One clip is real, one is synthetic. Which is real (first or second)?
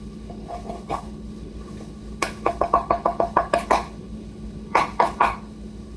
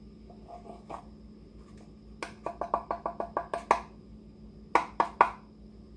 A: second